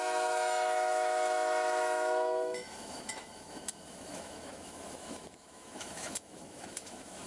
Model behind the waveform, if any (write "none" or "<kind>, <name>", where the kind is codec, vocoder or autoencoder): autoencoder, DAC-VAE